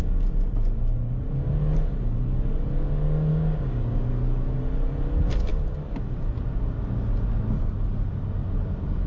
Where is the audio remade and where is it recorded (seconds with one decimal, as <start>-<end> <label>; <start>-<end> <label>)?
0.0-3.3 recorded; 3.3-4.1 remade; 4.1-9.1 recorded